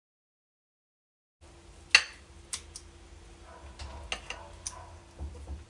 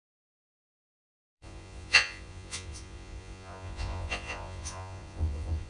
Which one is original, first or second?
first